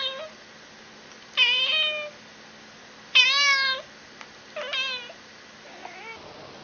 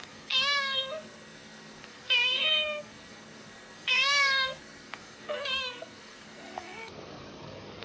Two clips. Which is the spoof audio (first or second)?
second